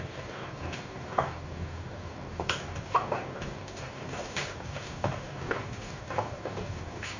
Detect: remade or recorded remade